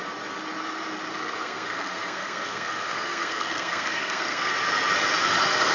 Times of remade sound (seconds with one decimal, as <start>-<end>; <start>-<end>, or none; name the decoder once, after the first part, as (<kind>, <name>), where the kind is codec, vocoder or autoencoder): 1.1-4.5 (codec, SNAC)